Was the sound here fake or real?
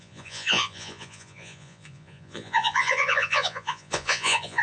fake